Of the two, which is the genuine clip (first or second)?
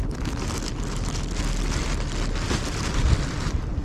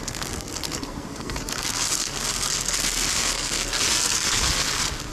first